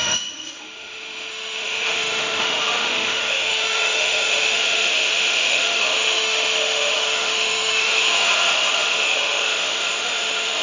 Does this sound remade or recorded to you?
remade